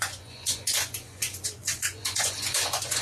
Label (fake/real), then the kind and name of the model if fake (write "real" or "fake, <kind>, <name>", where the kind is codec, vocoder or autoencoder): fake, vocoder, Vocos